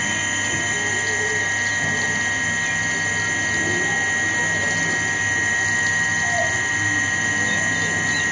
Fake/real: real